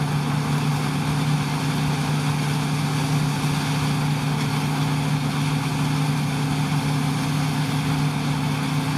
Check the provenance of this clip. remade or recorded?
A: recorded